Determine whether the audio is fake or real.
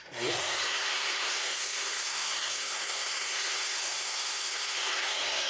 fake